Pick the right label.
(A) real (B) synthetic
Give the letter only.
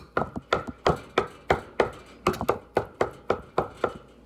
A